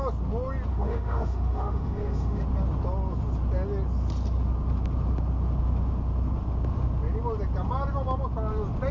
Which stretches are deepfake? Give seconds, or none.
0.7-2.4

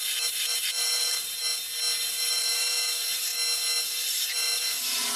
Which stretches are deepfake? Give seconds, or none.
0.0-1.4; 2.0-3.3; 4.1-5.2